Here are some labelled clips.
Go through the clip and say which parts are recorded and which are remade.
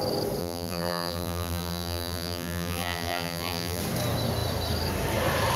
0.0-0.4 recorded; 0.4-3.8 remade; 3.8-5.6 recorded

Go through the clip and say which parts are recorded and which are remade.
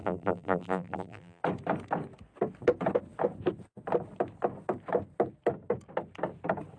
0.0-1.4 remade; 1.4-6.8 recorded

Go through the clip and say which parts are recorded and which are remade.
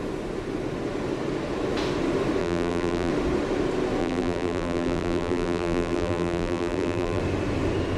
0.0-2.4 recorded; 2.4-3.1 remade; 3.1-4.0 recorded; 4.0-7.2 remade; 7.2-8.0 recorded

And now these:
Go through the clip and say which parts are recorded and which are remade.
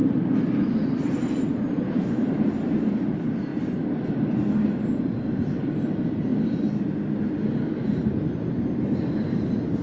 0.0-3.5 remade; 3.5-5.0 recorded; 5.0-6.3 remade; 6.3-7.8 recorded; 7.8-9.8 remade